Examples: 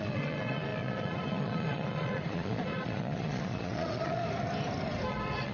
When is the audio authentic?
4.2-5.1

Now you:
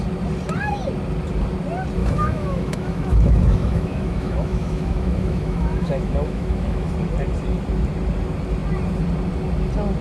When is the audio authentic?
0.0-2.0; 6.9-10.0

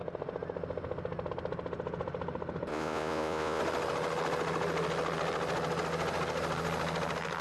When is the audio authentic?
0.0-2.7; 3.6-7.4